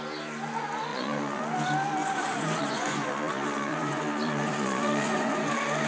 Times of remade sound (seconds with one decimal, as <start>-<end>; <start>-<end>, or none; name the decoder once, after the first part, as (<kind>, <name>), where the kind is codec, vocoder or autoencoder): 0.9-1.4 (vocoder, Vocos); 2.0-5.5